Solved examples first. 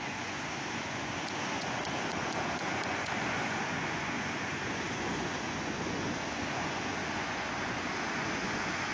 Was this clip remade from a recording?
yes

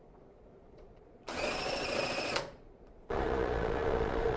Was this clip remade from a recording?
yes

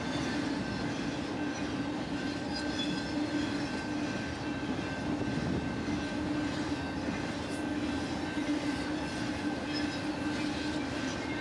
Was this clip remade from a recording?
no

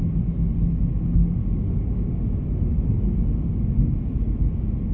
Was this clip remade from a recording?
no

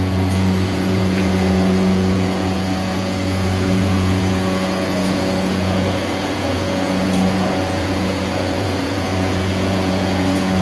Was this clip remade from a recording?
yes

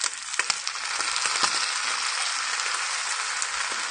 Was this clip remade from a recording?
no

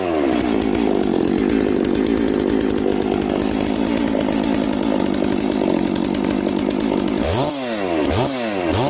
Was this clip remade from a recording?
no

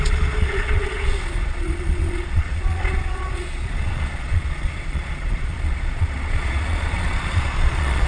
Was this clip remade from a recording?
yes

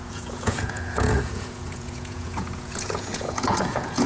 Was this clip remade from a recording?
yes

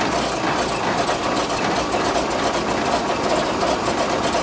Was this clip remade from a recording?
no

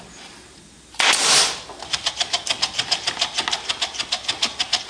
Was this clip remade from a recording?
no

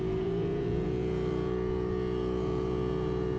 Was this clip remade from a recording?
yes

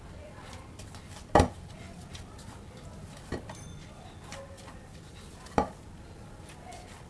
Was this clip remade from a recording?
no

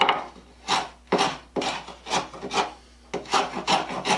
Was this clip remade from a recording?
no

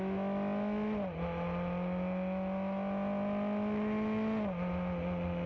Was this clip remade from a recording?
no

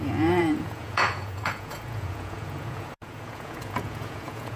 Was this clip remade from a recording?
yes